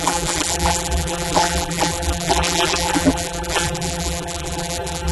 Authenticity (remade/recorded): remade